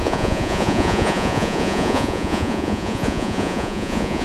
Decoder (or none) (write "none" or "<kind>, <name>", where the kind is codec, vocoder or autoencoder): vocoder, Vocos